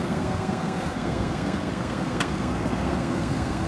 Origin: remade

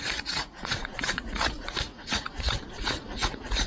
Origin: remade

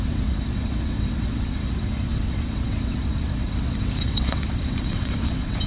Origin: remade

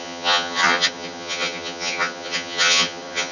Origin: remade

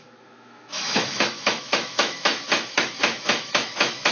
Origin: remade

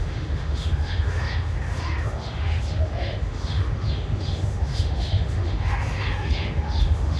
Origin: remade